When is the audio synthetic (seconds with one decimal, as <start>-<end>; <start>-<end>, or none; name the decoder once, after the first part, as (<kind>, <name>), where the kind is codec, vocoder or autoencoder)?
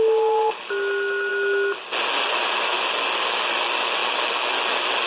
none